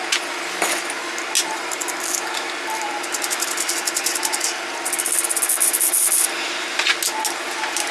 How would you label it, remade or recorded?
recorded